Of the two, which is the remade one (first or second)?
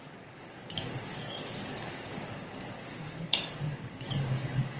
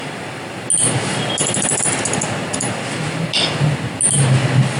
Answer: first